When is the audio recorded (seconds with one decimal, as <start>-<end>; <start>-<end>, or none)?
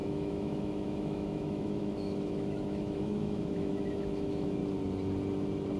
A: 4.6-5.8